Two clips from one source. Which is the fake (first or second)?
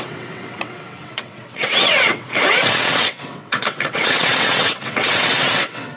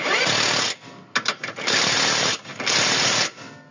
first